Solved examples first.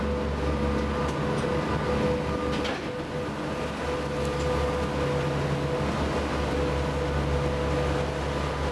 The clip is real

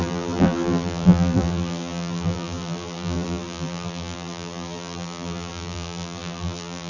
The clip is fake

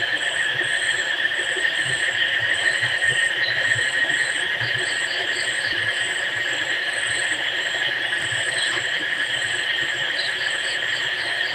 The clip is fake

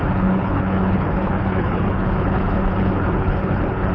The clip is fake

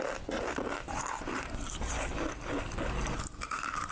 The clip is real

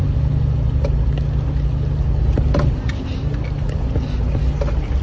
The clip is real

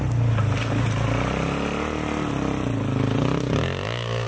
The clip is real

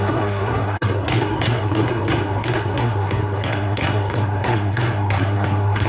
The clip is fake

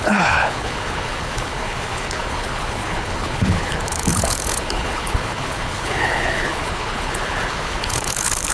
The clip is fake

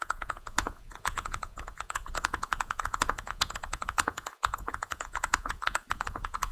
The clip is fake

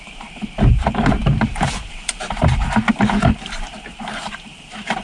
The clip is fake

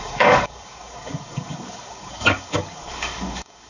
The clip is fake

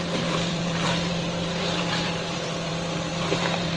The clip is fake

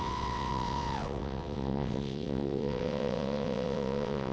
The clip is fake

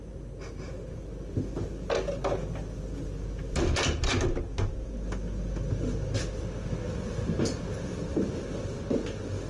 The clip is real